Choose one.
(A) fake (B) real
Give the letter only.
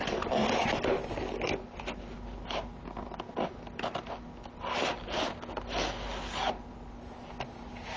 B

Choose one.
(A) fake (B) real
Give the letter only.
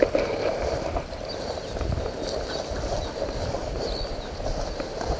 B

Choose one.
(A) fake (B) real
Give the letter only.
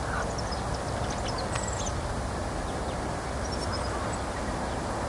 B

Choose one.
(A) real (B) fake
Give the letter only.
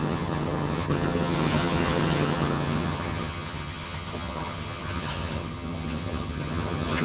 B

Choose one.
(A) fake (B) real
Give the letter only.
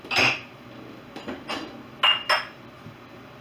B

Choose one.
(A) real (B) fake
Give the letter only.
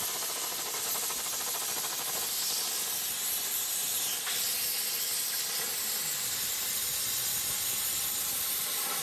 B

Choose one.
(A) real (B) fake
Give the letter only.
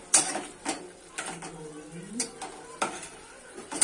A